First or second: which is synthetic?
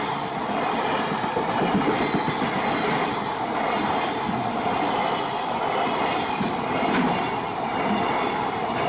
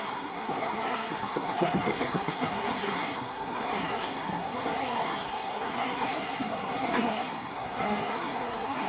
second